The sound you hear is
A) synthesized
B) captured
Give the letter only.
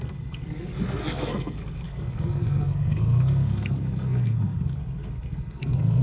A